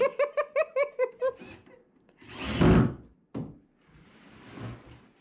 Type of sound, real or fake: real